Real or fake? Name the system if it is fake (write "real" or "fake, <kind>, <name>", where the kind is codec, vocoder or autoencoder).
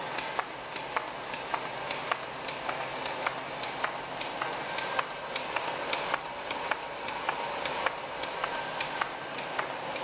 real